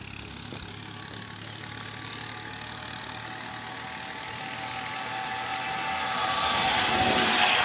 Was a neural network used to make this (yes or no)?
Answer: no